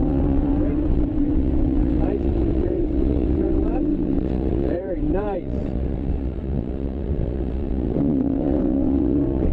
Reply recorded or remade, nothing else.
remade